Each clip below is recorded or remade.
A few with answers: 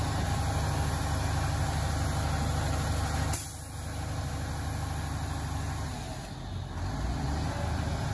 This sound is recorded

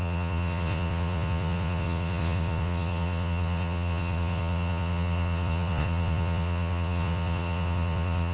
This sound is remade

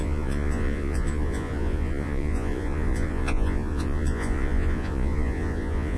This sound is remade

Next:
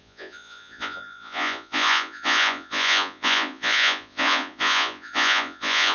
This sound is remade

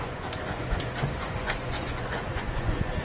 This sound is remade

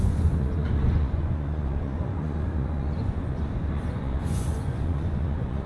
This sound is remade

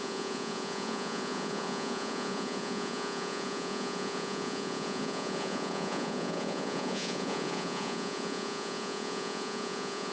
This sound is remade